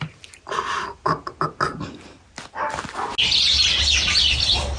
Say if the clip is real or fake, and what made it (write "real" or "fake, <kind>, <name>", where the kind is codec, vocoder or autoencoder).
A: real